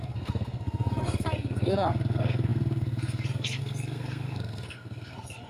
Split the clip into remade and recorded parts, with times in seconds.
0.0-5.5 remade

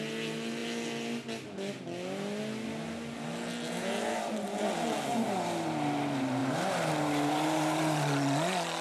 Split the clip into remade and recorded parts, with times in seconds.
0.0-8.8 recorded